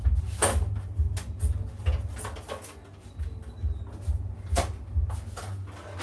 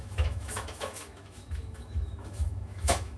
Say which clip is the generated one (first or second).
second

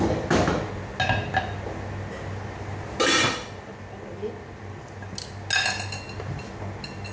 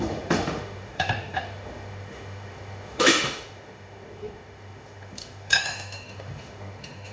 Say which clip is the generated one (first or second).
second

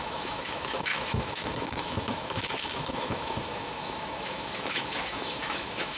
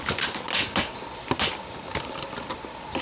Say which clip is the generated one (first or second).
first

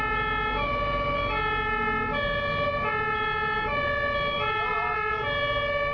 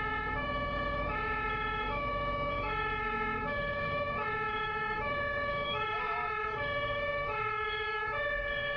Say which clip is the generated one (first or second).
second